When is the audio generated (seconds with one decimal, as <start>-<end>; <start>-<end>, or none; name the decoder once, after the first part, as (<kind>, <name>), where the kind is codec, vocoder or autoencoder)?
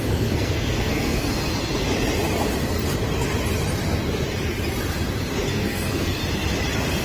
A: 0.0-1.3 (codec, SNAC); 5.5-6.2